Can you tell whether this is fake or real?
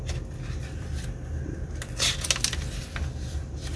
real